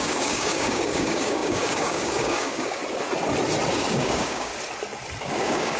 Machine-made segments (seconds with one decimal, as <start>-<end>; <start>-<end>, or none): 0.0-2.8; 3.7-4.5; 5.2-5.8